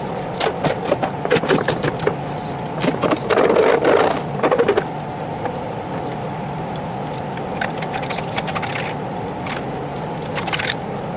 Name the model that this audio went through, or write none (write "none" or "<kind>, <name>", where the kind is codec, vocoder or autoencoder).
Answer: none